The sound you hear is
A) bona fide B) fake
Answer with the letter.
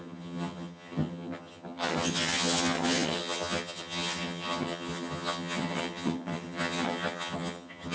B